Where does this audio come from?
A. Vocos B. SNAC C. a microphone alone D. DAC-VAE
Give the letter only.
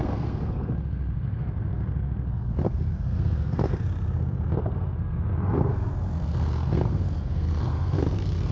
B